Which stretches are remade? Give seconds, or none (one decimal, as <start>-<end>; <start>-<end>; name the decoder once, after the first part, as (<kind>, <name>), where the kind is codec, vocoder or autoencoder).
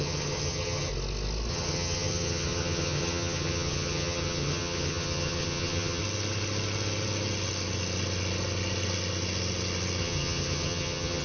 0.0-0.9 (vocoder, HiFi-GAN); 1.5-6.0; 10.0-11.2